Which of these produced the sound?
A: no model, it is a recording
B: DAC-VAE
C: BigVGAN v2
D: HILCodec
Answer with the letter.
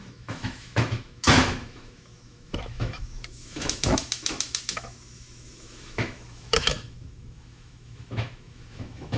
B